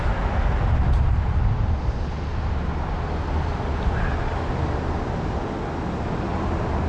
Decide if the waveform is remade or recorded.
recorded